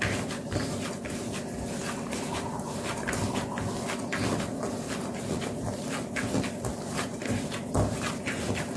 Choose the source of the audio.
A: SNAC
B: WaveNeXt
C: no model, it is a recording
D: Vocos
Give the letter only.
C